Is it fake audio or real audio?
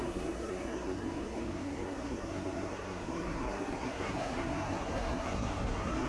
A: fake